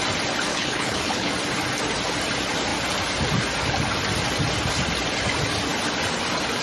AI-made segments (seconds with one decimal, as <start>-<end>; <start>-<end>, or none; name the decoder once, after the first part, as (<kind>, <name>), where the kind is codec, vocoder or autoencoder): 0.5-1.3 (codec, HILCodec)